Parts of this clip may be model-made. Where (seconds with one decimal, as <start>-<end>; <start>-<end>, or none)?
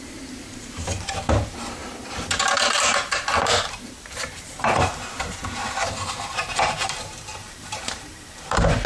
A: 0.0-8.9